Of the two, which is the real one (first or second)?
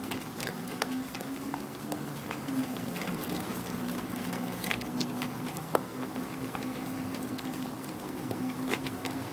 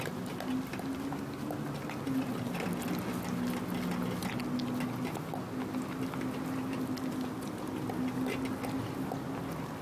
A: second